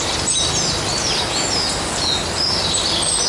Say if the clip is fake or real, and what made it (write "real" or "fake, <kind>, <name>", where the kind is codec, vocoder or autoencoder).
real